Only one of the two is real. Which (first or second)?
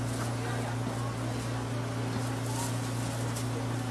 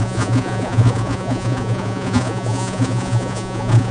first